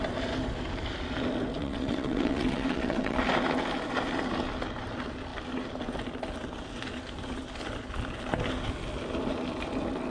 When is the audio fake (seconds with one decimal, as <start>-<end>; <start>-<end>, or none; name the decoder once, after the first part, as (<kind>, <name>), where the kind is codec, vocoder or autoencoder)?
1.6-3.2 (vocoder, WaveNeXt)